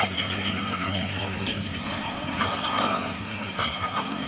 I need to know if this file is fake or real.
fake